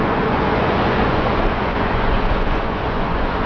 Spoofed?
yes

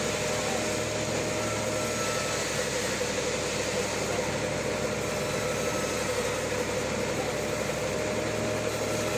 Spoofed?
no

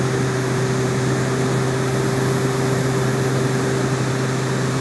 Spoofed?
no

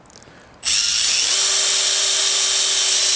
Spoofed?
no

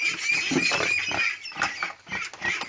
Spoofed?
no